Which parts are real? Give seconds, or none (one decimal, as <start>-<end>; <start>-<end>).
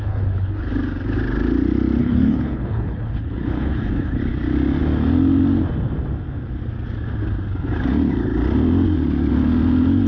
0.7-2.0; 4.2-10.1